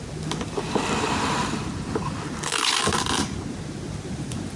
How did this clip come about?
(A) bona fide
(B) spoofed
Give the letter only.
A